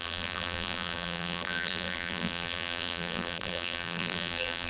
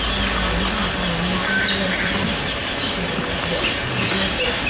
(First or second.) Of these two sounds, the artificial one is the first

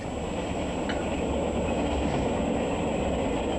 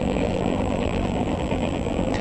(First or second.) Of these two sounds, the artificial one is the second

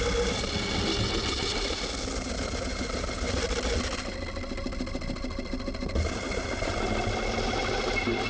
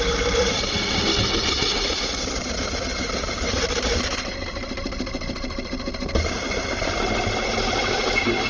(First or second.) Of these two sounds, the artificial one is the second